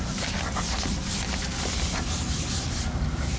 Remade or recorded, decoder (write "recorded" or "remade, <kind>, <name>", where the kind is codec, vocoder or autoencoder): recorded